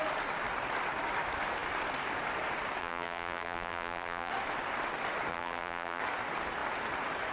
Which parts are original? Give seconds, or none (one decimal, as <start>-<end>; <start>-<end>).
0.0-2.8; 4.3-5.3; 6.0-7.3